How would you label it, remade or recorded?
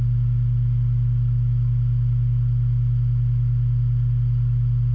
recorded